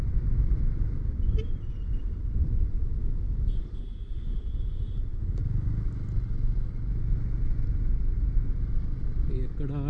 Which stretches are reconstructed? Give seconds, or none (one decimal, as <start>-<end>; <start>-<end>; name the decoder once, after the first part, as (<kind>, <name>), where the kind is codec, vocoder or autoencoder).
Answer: 2.8-4.1 (vocoder, BigVGAN v2); 5.4-5.9